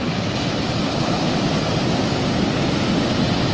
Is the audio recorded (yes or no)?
yes